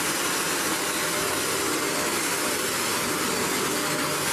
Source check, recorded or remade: recorded